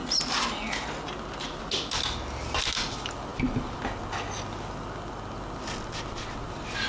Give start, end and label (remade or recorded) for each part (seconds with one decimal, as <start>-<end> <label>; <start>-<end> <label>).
0.0-6.9 recorded

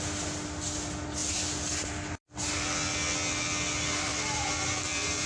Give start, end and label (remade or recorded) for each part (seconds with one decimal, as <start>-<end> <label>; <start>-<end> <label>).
0.0-1.2 recorded; 1.2-2.5 remade; 2.5-4.1 recorded; 4.1-5.3 remade

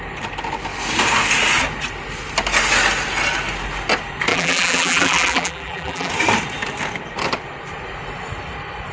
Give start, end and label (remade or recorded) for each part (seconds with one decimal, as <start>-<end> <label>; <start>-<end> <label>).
0.0-4.3 recorded; 4.3-6.1 remade; 6.1-8.9 recorded

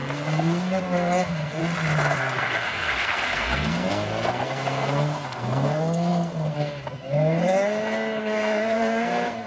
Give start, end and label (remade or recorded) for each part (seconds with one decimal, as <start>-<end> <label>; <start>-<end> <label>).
0.0-1.6 remade; 1.6-2.2 recorded; 2.2-9.5 remade

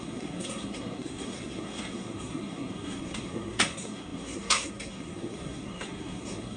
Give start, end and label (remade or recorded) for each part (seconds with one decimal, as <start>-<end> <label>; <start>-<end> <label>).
0.0-6.6 remade

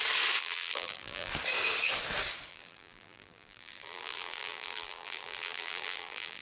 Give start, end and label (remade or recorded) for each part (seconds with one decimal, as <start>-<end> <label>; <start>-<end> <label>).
0.0-0.4 recorded; 0.4-1.3 remade; 1.3-2.5 recorded; 2.5-6.4 remade

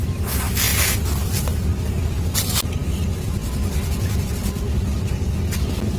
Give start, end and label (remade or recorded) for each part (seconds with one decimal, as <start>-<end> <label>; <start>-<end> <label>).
0.0-6.0 recorded

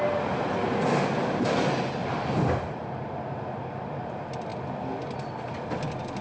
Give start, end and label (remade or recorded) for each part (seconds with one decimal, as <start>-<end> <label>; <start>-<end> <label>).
0.0-2.0 recorded; 2.0-4.1 remade; 4.1-6.2 recorded